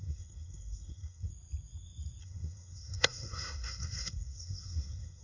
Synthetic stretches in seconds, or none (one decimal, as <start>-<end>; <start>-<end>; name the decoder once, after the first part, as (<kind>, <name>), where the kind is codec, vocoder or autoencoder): 0.0-1.3 (codec, SNAC); 2.2-5.2